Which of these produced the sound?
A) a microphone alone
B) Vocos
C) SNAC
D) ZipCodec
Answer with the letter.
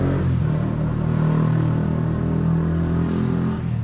A